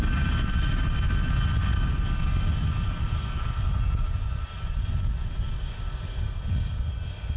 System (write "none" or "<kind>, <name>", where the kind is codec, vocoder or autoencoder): none